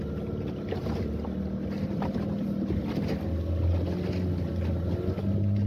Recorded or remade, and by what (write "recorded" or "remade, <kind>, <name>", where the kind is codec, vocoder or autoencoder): recorded